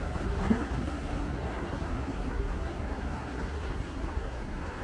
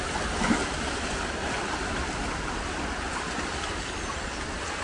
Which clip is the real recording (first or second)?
second